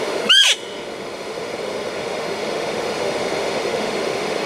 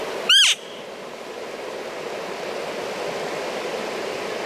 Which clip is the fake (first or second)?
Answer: first